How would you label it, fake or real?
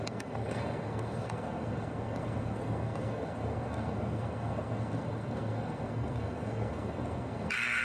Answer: fake